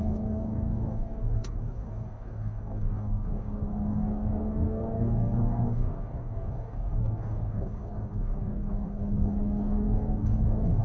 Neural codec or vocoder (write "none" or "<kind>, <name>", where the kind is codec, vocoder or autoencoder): codec, DAC